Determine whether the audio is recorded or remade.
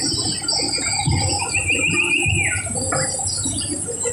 recorded